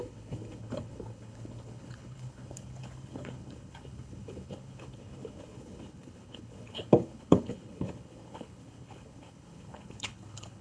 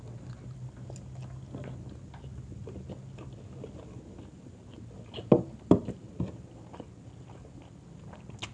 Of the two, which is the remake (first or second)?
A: first